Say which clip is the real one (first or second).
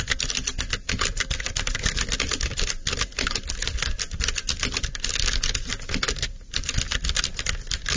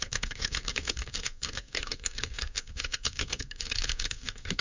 first